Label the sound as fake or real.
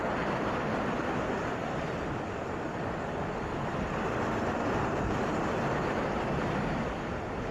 real